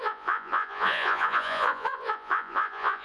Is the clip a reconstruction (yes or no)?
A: yes